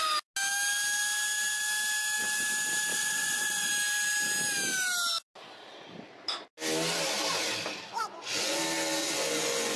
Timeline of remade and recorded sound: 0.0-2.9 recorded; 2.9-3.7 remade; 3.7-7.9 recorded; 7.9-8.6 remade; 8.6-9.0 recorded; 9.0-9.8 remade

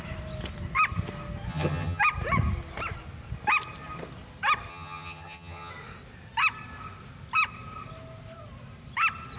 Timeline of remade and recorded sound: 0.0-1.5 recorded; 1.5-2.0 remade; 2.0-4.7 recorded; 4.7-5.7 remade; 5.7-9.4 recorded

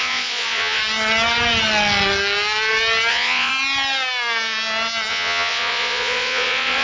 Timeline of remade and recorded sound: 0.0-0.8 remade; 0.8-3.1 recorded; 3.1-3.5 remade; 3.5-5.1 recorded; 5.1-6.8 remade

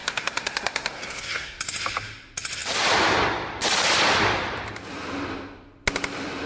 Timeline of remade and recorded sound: 0.0-1.6 remade; 1.6-6.5 recorded

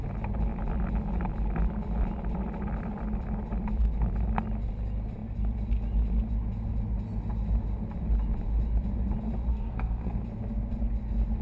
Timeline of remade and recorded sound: 0.0-9.5 recorded; 9.5-10.2 remade; 10.2-11.4 recorded